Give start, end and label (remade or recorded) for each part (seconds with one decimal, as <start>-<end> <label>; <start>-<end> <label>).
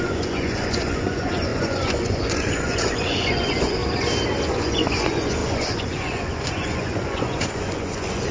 0.0-3.8 remade; 3.8-4.5 recorded; 4.5-8.3 remade